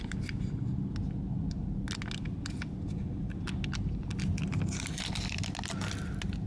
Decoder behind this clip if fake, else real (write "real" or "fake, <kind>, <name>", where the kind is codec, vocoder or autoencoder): real